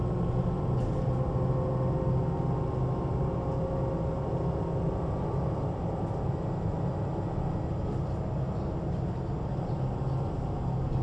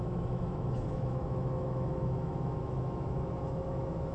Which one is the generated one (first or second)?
second